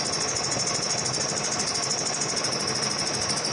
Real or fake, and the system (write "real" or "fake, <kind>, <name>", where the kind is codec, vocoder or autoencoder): real